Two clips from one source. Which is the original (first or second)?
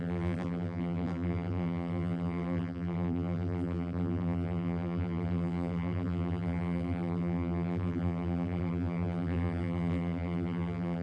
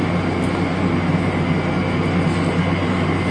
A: second